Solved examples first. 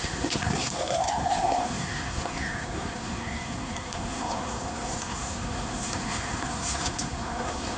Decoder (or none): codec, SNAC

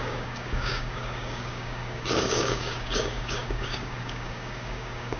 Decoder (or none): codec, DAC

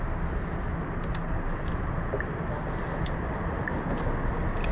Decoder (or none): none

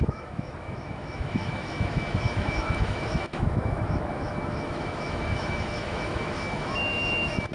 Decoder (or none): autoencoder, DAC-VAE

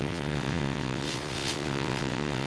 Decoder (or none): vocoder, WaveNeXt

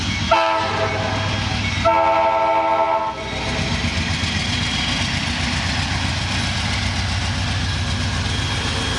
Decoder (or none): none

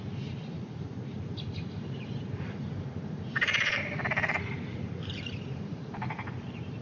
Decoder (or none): vocoder, BigVGAN v2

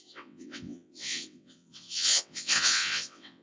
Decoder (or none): vocoder, WaveNeXt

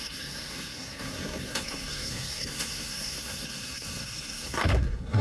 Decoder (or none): codec, SNAC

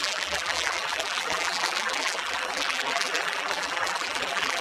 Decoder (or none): vocoder, BigVGAN v2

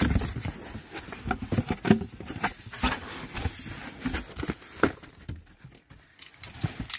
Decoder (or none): none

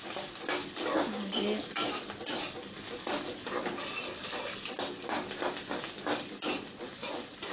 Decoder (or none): none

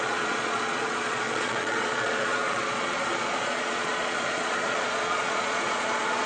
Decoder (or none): vocoder, Vocos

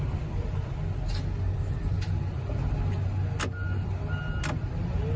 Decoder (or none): none